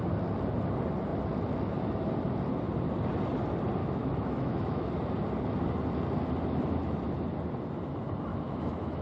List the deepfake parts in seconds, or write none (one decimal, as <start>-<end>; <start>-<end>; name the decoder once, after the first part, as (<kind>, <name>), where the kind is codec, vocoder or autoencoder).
3.8-4.9 (autoencoder, DAC-VAE); 8.3-9.0